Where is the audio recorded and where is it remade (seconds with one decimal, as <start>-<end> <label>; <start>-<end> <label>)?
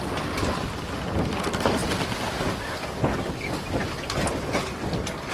0.0-5.3 recorded